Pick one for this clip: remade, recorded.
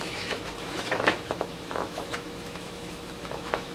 remade